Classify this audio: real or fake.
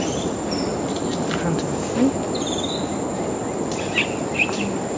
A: real